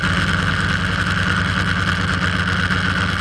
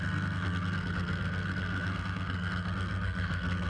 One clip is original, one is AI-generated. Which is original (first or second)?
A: first